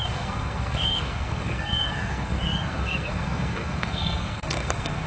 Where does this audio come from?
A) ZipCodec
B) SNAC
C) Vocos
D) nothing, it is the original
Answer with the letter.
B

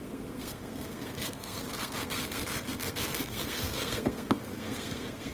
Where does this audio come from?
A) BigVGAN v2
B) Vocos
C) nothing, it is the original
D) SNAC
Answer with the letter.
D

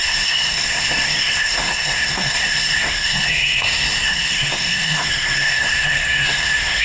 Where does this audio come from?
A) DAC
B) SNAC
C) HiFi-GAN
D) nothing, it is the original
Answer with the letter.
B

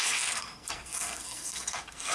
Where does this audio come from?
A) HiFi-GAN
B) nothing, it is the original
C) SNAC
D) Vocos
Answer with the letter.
C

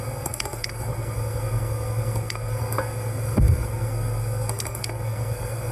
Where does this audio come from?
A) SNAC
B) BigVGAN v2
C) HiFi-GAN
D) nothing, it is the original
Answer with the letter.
A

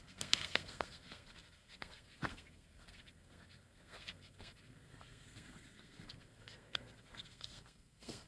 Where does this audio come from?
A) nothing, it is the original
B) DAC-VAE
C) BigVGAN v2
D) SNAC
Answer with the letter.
D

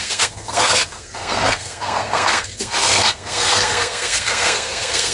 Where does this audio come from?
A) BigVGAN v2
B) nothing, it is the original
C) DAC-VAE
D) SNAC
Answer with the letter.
D